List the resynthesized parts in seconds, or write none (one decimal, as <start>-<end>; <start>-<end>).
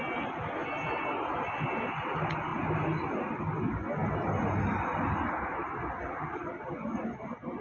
none